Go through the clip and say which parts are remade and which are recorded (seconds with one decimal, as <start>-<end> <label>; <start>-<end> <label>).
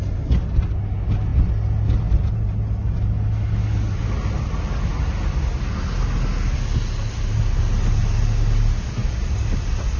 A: 0.0-10.0 recorded